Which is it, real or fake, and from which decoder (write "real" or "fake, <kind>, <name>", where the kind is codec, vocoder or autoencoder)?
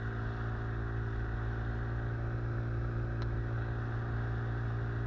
real